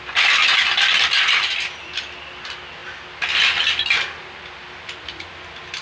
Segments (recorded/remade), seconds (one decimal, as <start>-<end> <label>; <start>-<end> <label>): 0.0-5.8 recorded